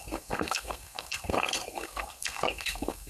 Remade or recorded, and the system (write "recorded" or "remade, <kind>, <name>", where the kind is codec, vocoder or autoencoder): remade, codec, SNAC